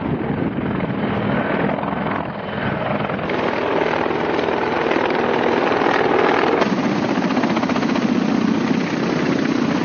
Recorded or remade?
recorded